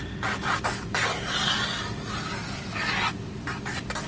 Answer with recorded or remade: recorded